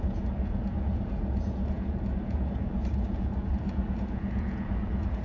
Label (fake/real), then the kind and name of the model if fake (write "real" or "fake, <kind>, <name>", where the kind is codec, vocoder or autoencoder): fake, vocoder, Vocos